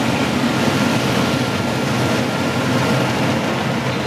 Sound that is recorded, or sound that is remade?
recorded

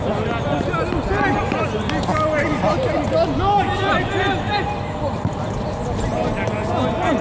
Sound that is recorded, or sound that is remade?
recorded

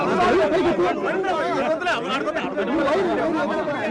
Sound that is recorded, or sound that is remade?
recorded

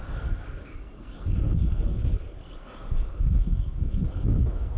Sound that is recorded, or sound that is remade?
remade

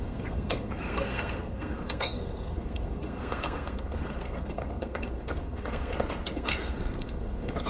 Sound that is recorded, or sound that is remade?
remade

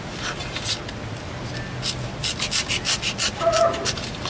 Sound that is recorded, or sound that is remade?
recorded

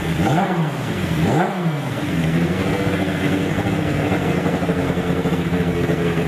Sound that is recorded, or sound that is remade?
remade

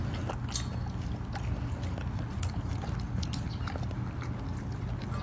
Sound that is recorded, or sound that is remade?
recorded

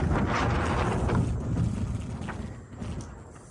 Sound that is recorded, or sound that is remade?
recorded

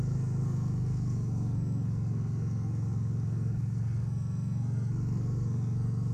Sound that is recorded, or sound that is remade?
remade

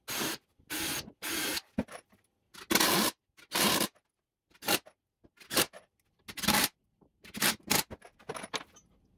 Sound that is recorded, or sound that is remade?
recorded